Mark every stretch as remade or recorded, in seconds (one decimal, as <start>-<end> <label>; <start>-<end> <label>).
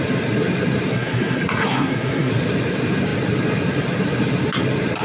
0.0-0.9 recorded; 0.9-2.3 remade; 2.3-5.0 recorded